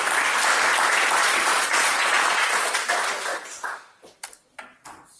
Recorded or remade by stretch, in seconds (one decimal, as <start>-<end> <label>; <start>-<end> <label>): 0.0-1.2 recorded; 1.2-2.7 remade; 2.7-5.2 recorded